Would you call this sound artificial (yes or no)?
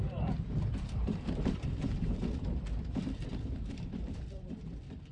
yes